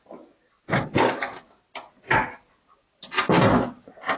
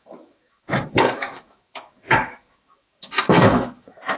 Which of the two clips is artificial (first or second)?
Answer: second